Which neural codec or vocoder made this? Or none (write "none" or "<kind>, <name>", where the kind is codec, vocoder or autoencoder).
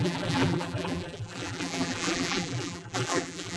vocoder, BigVGAN v2